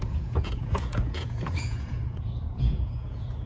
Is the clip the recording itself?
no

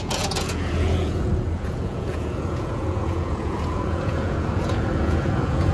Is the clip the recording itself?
no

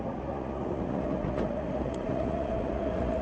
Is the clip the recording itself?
no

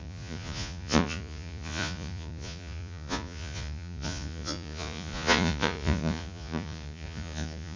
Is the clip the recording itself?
no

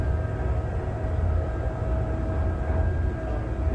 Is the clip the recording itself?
yes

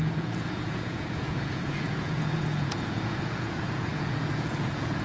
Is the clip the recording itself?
no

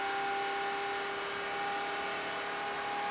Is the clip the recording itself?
yes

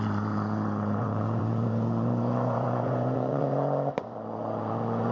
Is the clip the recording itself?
no